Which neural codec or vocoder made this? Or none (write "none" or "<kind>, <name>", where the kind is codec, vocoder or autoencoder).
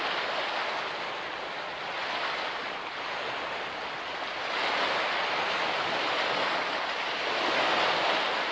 none